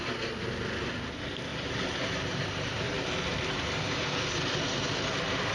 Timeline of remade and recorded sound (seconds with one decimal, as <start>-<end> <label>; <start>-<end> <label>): 0.0-1.5 recorded; 1.5-2.8 remade; 2.8-5.5 recorded